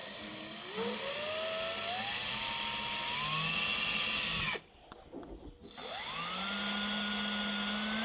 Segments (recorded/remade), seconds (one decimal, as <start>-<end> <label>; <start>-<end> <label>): 0.0-8.0 recorded